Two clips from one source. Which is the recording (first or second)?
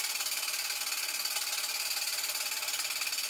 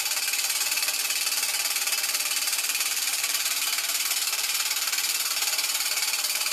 first